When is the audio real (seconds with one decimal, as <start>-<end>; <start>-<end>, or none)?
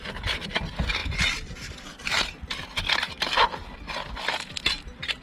0.0-5.2